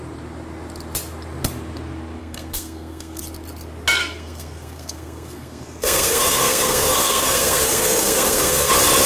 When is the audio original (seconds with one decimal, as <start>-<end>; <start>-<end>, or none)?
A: 0.0-2.2; 3.2-4.0; 8.7-9.1